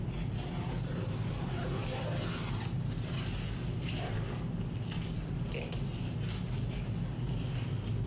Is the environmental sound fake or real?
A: real